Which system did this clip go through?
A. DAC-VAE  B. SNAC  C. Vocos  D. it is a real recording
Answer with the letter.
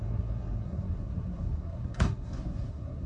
B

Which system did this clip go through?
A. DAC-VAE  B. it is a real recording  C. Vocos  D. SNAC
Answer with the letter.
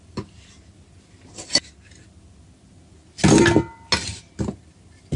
B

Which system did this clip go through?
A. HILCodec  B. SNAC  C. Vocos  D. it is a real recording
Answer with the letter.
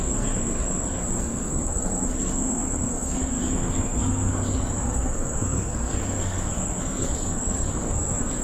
B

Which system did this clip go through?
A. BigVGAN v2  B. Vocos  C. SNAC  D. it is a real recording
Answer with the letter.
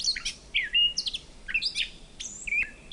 D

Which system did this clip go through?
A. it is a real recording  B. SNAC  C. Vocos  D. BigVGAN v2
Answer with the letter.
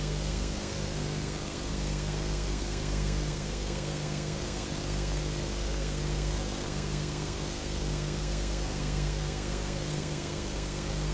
B